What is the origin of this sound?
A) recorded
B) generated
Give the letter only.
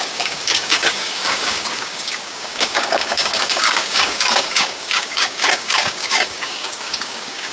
B